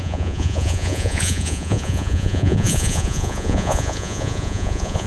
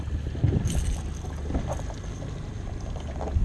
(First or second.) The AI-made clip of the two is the first